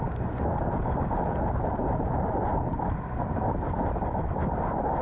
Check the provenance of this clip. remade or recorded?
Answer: recorded